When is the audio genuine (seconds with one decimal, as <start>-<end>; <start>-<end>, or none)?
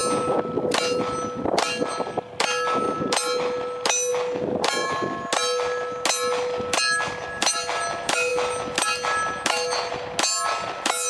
0.0-11.1